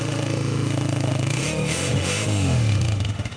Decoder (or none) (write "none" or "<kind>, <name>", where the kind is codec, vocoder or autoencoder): autoencoder, DAC-VAE